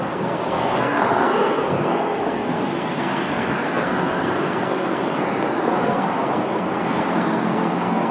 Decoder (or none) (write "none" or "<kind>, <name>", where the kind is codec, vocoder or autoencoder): codec, SNAC